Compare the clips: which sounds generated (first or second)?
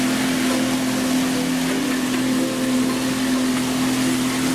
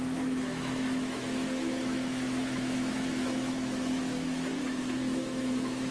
second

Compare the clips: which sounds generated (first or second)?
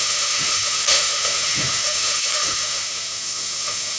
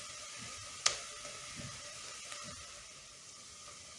first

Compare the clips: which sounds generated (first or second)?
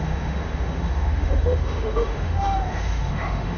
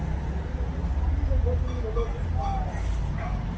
first